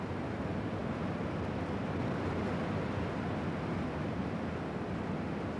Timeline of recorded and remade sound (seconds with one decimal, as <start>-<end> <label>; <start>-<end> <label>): 0.0-5.6 recorded